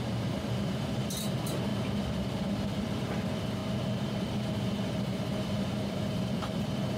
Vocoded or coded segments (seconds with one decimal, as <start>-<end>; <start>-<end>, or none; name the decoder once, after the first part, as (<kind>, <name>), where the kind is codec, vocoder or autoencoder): 0.0-3.6 (vocoder, BigVGAN v2); 5.0-7.0